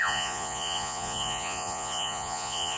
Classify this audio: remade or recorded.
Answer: remade